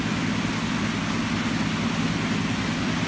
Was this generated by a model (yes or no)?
no